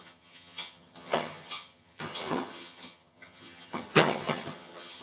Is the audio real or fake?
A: fake